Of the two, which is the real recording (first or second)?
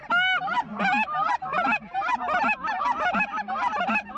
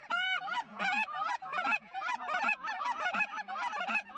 first